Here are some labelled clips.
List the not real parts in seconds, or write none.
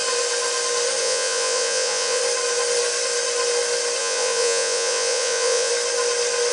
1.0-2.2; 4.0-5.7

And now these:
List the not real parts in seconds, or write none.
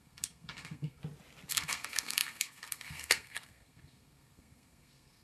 0.0-1.0; 1.5-5.2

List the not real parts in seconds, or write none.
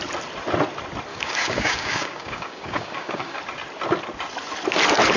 1.1-3.4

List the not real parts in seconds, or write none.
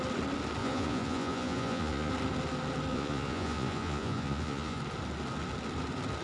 0.6-2.1; 2.9-4.8